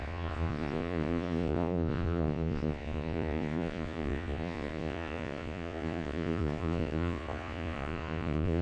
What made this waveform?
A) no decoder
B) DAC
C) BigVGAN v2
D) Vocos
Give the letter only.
D